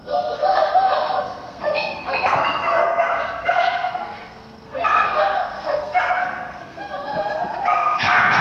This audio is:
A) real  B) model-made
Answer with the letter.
B